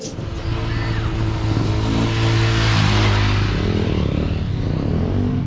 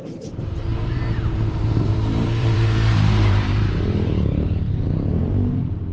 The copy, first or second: second